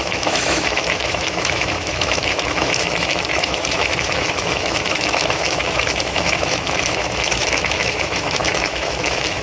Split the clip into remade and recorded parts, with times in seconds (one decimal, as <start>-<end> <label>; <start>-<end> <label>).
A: 0.0-9.4 remade